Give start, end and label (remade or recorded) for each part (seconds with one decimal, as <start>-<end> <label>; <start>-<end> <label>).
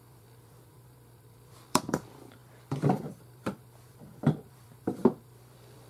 0.0-5.9 remade